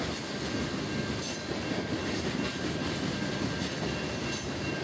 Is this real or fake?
real